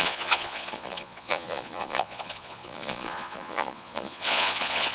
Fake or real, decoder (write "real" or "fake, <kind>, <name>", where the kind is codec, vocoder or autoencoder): fake, vocoder, Vocos